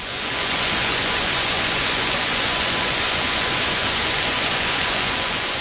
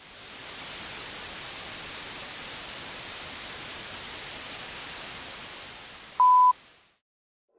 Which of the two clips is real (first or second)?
second